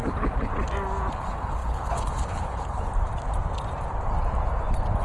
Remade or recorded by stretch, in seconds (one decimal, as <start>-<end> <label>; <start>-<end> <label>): 0.0-0.5 remade; 0.5-1.1 recorded; 1.1-2.9 remade; 2.9-5.0 recorded